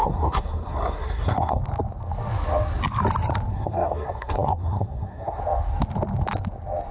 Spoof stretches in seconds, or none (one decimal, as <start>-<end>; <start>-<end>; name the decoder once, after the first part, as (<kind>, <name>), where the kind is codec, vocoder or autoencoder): 0.0-1.6 (codec, SNAC); 3.5-5.4